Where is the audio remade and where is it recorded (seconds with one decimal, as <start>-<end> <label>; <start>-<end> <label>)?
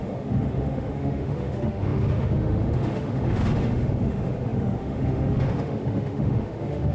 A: 0.0-6.9 remade